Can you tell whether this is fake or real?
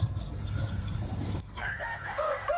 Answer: fake